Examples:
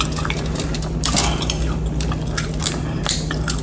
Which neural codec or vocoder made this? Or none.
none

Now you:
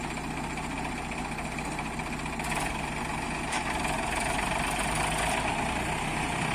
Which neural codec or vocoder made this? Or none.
none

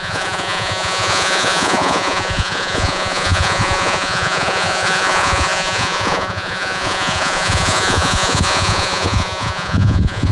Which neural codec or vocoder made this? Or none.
vocoder, Vocos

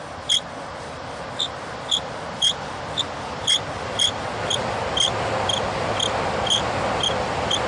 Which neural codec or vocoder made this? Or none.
none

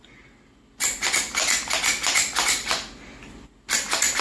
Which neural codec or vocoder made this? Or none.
none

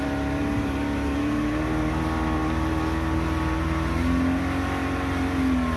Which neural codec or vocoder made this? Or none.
none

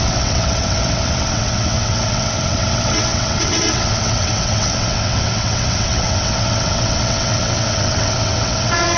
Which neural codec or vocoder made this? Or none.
vocoder, WaveNeXt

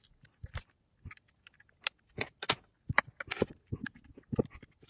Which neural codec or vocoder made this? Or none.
none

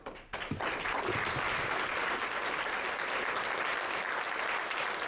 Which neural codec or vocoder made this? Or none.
none